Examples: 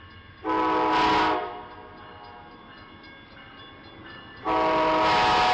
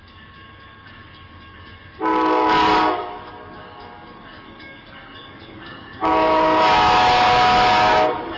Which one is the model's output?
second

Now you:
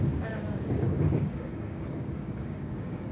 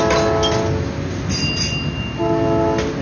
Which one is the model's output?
first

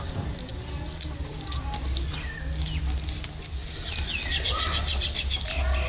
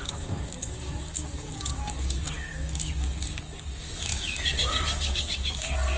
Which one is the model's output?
second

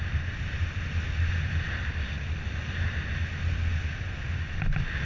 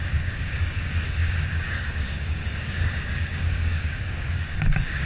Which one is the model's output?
second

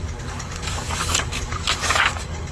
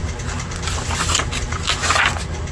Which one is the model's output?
first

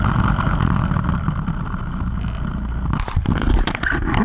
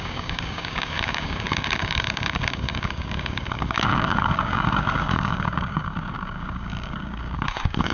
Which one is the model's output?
second